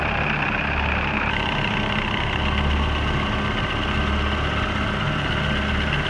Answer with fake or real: real